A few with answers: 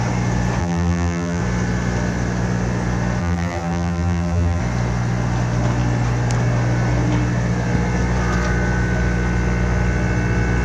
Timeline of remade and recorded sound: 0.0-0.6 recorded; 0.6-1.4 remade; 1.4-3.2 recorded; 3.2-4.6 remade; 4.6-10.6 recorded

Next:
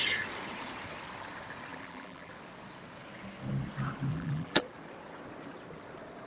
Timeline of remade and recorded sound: 0.0-1.7 recorded; 1.7-2.3 remade; 2.3-4.1 recorded; 4.1-4.6 remade; 4.6-6.3 recorded

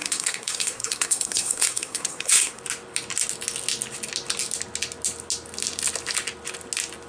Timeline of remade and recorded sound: 0.0-2.6 remade; 2.6-7.1 recorded

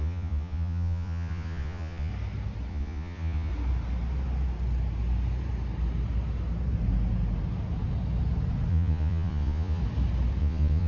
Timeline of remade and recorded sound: 0.0-2.1 remade; 2.1-2.7 recorded; 2.7-3.5 remade; 3.5-8.7 recorded; 8.7-9.8 remade; 9.8-10.4 recorded; 10.4-10.9 remade

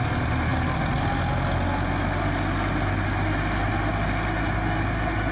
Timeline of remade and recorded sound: 0.0-5.3 recorded

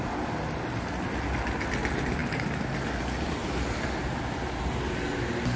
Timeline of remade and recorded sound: 0.0-5.6 recorded

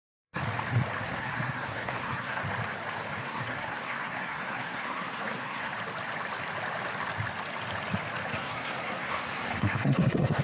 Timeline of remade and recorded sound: 0.0-0.4 remade; 0.4-1.0 recorded; 1.0-2.4 remade; 2.4-3.2 recorded; 3.2-5.7 remade; 5.7-8.3 recorded; 8.3-10.4 remade